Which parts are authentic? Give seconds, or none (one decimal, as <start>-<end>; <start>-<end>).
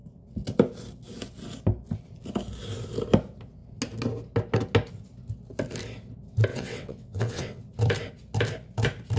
0.0-6.5; 7.6-9.2